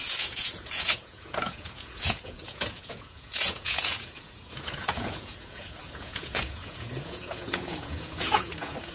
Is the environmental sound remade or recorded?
remade